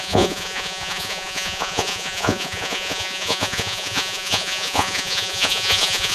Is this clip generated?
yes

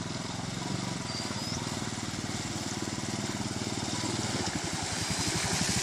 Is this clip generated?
no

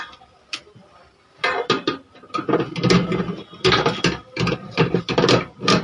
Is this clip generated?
no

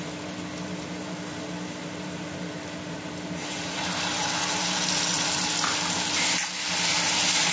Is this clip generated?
no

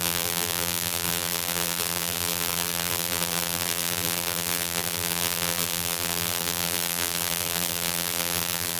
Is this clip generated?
yes